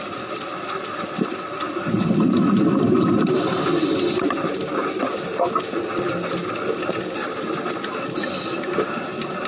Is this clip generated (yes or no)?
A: no